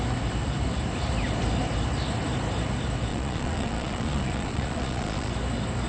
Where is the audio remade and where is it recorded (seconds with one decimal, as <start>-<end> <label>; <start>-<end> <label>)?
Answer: 0.0-3.1 recorded; 3.1-5.3 remade; 5.3-5.9 recorded